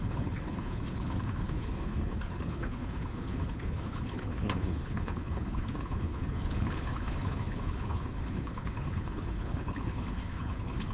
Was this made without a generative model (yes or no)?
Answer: no